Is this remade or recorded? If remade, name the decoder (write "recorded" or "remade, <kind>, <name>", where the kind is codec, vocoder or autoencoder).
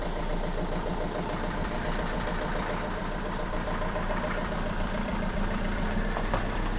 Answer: remade, vocoder, BigVGAN v2